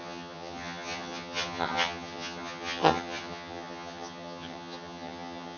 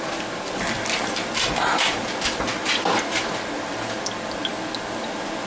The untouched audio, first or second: second